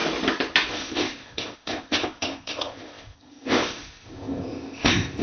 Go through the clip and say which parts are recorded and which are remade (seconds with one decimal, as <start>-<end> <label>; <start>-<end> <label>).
0.0-0.7 recorded; 0.7-5.2 remade